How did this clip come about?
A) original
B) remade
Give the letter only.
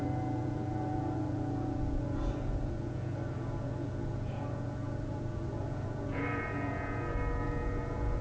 B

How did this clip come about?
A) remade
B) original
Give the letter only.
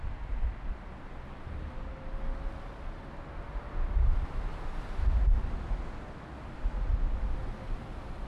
B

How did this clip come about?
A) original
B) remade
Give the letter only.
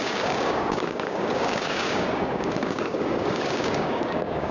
B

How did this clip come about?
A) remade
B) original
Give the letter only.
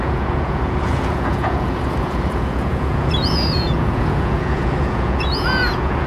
A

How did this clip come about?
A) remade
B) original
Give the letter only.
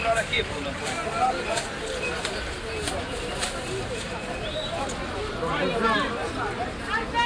B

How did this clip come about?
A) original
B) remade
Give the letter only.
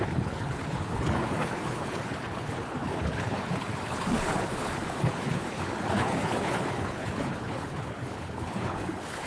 B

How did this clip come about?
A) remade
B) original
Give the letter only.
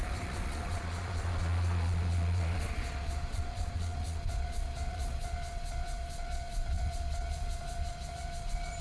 A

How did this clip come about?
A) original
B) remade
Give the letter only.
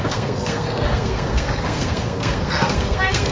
B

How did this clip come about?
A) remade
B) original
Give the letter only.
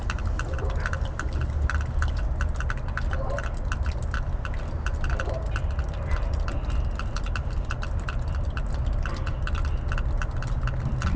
B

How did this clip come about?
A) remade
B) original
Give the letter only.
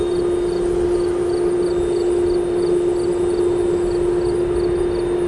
B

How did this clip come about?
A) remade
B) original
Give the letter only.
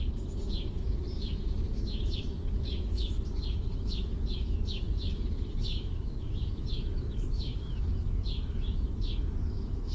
A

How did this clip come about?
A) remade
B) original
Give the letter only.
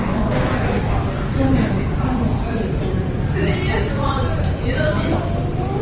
A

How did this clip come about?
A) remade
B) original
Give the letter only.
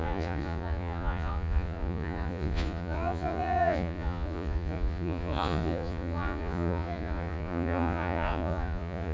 A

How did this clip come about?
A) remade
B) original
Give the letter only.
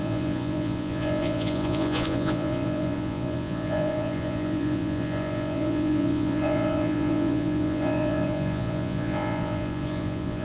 A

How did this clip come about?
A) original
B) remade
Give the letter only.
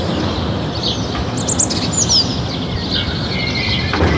A